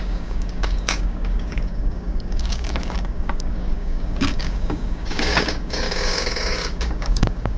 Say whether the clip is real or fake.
fake